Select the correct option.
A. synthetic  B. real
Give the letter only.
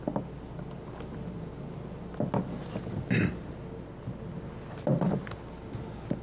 B